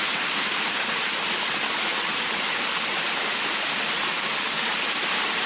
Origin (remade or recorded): recorded